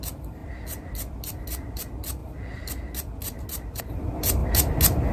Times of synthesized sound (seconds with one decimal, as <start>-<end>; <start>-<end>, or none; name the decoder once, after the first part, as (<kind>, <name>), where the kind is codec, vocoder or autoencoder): none